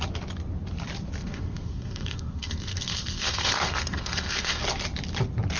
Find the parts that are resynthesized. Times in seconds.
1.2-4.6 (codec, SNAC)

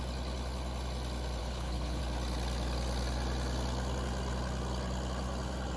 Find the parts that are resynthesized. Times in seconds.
1.4-2.0 (codec, HILCodec)

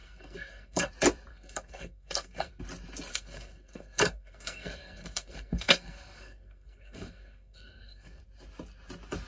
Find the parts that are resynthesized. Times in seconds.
0.0-0.9 (codec, SNAC); 1.3-2.6; 3.1-8.2